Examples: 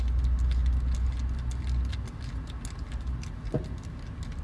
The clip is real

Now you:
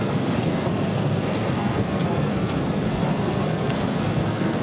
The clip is fake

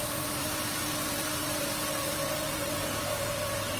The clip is fake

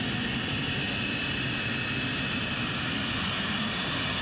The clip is real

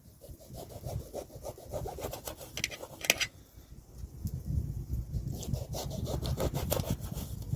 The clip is real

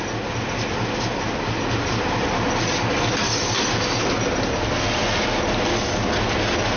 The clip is real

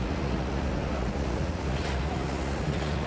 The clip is fake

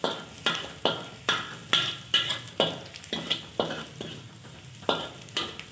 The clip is real